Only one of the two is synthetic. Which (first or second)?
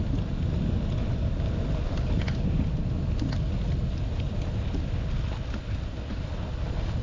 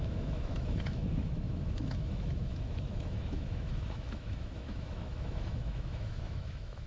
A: second